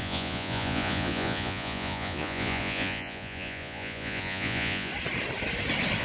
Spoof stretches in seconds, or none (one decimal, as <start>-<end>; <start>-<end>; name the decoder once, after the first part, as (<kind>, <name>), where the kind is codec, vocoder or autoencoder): 0.0-4.9 (vocoder, Vocos)